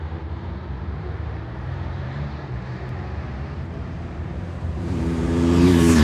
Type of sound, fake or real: fake